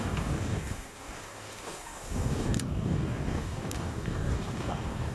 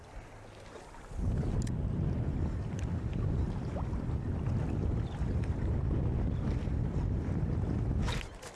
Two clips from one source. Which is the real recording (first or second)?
second